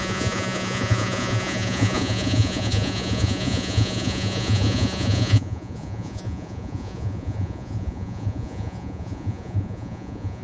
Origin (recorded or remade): remade